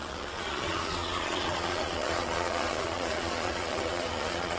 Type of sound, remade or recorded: remade